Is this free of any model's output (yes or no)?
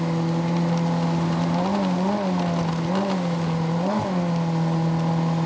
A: yes